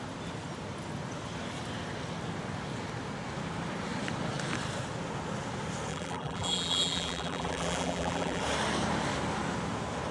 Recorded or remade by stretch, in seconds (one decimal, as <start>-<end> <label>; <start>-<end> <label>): 0.0-5.9 recorded; 5.9-8.4 remade; 8.4-10.1 recorded

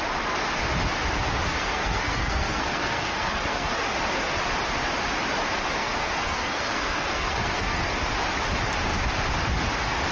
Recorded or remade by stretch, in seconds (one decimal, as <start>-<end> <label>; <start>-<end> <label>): 0.0-1.5 recorded; 1.5-3.8 remade; 3.8-5.8 recorded; 5.8-8.0 remade; 8.0-10.1 recorded

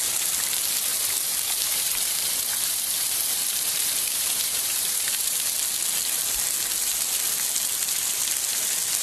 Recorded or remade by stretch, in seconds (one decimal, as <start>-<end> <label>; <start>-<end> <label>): 0.0-0.9 recorded; 0.9-5.4 remade; 5.4-9.0 recorded

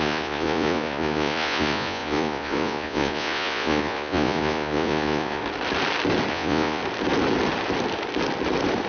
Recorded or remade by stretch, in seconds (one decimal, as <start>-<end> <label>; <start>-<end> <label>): 0.0-5.4 remade; 5.4-6.3 recorded; 6.3-6.8 remade; 6.8-8.9 recorded

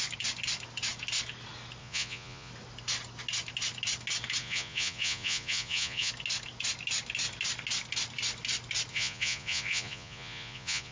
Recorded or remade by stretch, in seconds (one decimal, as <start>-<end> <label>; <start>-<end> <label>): 0.0-1.8 recorded; 1.8-2.5 remade; 2.5-4.4 recorded; 4.4-6.1 remade; 6.1-8.9 recorded; 8.9-10.9 remade

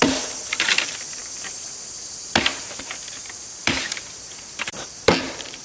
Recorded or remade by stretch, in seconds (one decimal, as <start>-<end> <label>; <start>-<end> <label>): 0.0-1.2 remade; 1.2-3.6 recorded; 3.6-5.6 remade